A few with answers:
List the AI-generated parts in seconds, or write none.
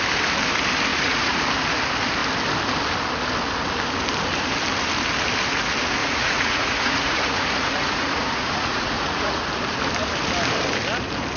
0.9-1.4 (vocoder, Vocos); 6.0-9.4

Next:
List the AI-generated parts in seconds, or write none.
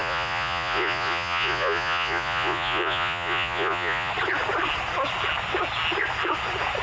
0.0-4.1 (vocoder, Vocos)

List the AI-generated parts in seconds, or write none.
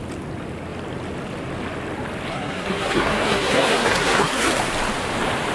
2.3-4.6 (codec, SNAC)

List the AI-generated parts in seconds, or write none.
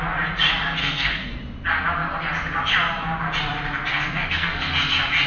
0.8-1.4 (codec, SNAC); 3.9-4.7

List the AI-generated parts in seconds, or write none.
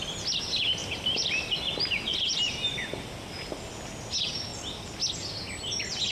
0.8-3.9 (vocoder, BigVGAN v2)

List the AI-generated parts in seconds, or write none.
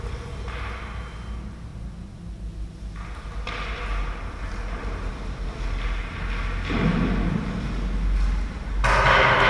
none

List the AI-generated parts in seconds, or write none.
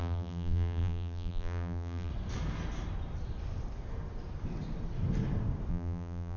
0.0-2.1 (vocoder, BigVGAN v2); 5.7-6.4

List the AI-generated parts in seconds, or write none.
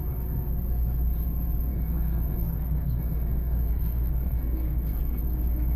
1.7-5.2 (codec, SNAC)